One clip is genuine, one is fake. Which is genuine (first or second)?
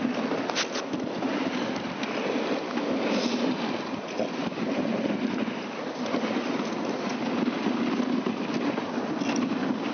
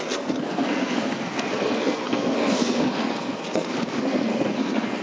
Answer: first